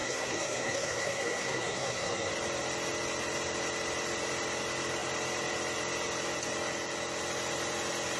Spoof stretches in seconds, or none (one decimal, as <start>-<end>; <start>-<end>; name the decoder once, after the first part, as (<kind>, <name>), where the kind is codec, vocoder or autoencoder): 0.0-2.3 (codec, SNAC)